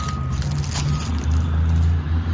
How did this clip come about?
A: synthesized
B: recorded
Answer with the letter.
B